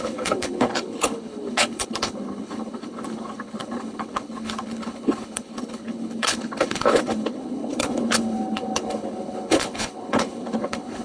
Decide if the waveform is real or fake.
fake